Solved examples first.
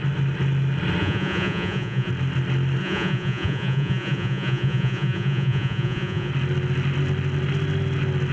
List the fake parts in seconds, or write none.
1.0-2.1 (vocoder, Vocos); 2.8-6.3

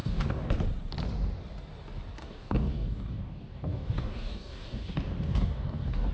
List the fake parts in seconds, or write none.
0.0-0.5 (codec, DAC); 2.2-6.1

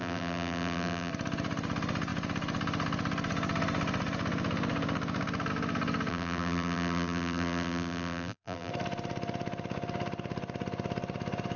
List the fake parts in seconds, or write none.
0.0-1.1 (vocoder, BigVGAN v2); 6.1-8.7

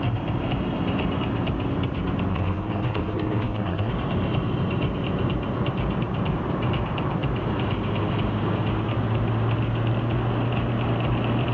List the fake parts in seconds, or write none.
2.3-3.9 (codec, SNAC)

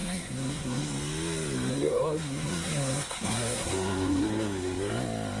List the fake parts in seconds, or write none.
0.0-0.9 (codec, SNAC); 1.7-4.9